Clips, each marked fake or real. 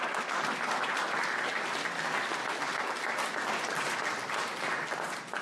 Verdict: real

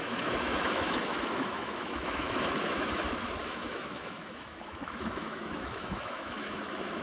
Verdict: fake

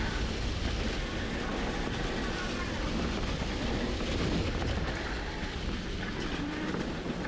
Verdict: real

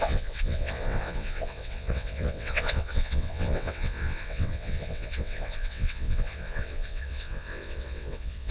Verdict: fake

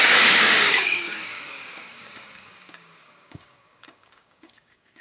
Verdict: fake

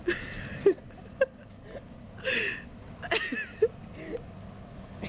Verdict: real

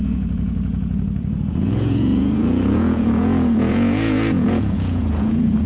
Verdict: fake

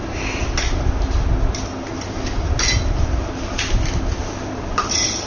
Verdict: real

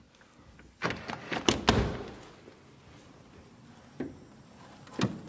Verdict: real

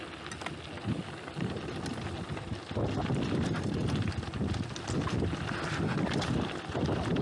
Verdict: real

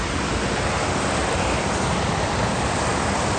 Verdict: real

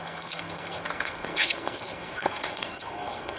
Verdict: fake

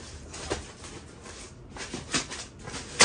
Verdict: real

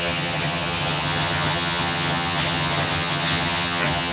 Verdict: fake